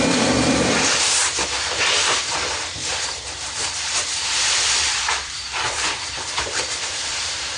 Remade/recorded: remade